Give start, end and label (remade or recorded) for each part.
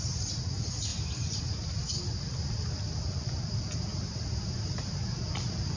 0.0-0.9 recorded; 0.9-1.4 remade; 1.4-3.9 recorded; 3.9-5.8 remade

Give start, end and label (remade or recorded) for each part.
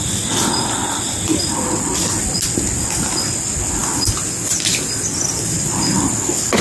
0.0-0.8 recorded; 0.8-2.1 remade; 2.1-6.6 recorded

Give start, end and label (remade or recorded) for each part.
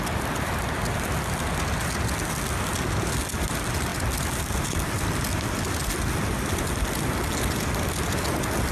0.0-8.7 recorded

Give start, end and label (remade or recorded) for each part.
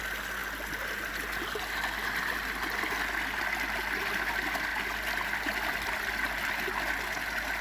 0.0-7.6 recorded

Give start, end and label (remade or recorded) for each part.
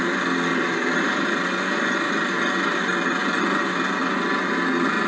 0.0-0.5 recorded; 0.5-1.4 remade; 1.4-5.1 recorded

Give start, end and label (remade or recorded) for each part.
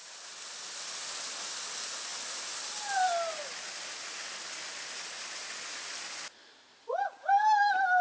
0.0-8.0 recorded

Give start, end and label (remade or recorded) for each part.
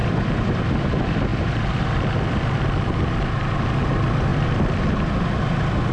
0.0-0.7 remade; 0.7-1.3 recorded; 1.3-2.8 remade; 2.8-4.3 recorded; 4.3-5.2 remade; 5.2-5.9 recorded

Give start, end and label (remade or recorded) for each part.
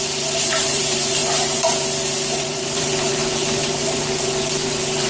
0.0-1.2 remade; 1.2-2.4 recorded; 2.4-5.1 remade